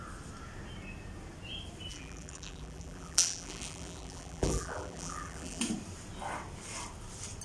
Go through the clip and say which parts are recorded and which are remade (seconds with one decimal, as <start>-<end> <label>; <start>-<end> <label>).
0.0-1.9 recorded; 1.9-5.6 remade; 5.6-7.4 recorded